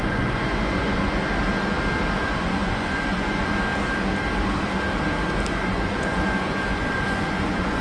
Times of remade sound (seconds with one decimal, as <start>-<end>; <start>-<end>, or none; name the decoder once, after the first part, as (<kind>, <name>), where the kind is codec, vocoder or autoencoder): 0.0-1.2 (vocoder, Vocos); 2.2-3.7; 5.5-7.8